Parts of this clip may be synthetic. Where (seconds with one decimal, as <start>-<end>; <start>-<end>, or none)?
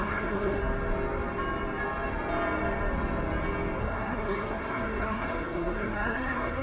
0.0-0.6; 3.8-6.6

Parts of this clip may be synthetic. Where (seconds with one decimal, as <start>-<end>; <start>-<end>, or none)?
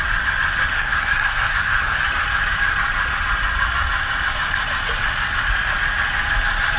0.7-2.0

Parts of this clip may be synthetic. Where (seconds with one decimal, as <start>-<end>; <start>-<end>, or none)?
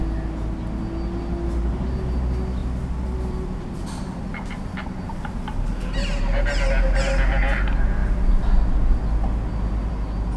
2.6-4.0